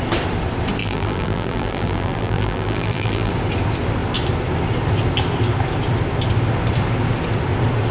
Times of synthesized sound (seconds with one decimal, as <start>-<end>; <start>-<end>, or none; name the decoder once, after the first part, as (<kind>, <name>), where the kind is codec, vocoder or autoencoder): 0.8-3.3 (vocoder, BigVGAN v2)